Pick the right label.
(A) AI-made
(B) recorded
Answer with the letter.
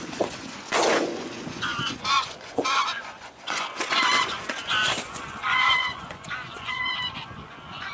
A